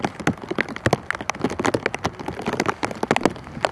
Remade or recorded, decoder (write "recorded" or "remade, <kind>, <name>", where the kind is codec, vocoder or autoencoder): recorded